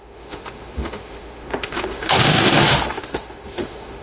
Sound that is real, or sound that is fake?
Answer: fake